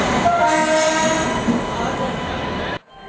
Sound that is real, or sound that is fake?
real